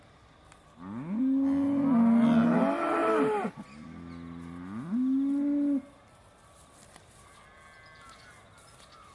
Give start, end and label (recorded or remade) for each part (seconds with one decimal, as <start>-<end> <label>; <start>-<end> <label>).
0.0-9.1 recorded

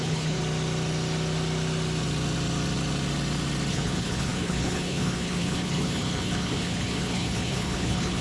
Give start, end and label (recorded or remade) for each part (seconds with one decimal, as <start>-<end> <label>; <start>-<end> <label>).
0.0-0.4 remade; 0.4-3.7 recorded; 3.7-8.2 remade

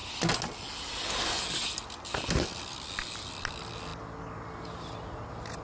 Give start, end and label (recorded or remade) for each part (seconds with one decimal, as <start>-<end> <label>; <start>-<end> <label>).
0.0-5.6 recorded

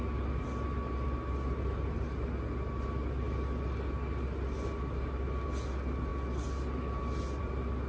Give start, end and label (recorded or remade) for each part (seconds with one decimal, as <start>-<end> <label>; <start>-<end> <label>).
0.0-7.9 recorded

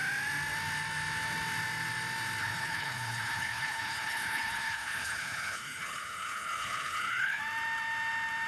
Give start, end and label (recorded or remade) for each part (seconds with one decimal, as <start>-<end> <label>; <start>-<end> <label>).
0.0-2.4 recorded; 2.4-7.4 remade; 7.4-8.5 recorded

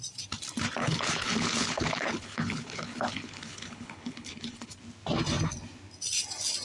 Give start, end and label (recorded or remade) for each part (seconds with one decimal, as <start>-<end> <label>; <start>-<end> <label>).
0.0-0.8 recorded; 0.8-4.8 remade; 4.8-6.6 recorded

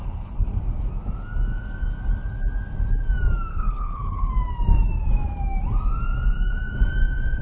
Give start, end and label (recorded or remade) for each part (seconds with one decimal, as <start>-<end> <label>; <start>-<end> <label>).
0.0-0.6 remade; 0.6-3.5 recorded; 3.5-4.3 remade; 4.3-7.4 recorded

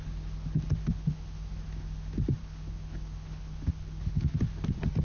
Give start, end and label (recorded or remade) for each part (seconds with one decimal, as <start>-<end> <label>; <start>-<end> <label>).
0.0-0.9 recorded; 0.9-1.5 remade; 1.5-2.4 recorded; 2.4-4.3 remade; 4.3-5.0 recorded